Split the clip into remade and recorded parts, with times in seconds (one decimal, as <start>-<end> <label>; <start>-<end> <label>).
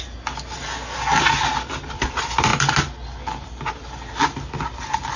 0.0-5.2 recorded